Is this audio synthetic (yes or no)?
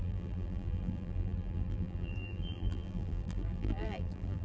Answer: yes